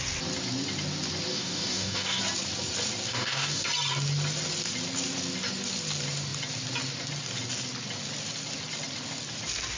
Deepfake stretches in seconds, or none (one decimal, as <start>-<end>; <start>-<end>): 1.3-2.2; 3.1-3.7